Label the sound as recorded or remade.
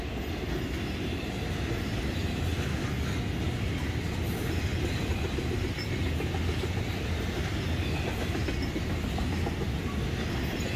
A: recorded